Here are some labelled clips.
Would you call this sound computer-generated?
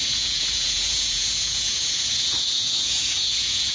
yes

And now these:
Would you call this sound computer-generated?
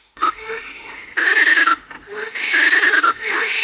yes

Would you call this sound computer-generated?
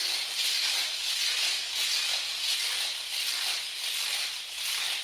no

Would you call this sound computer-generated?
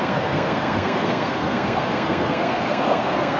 yes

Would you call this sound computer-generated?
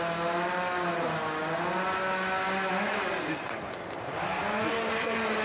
no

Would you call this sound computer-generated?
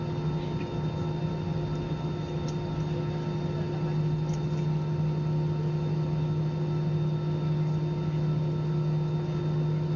no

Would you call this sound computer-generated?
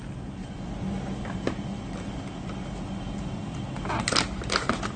no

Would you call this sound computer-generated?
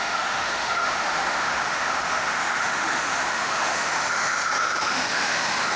yes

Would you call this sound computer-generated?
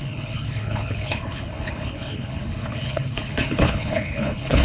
yes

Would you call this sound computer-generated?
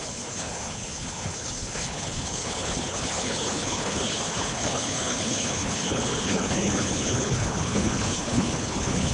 yes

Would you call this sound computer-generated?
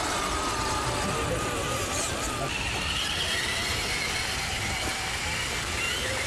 no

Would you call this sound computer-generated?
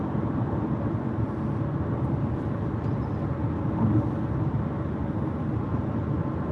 no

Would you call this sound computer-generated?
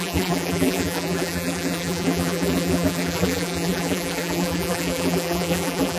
yes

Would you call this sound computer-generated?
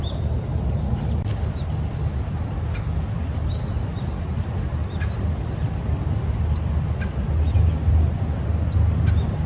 no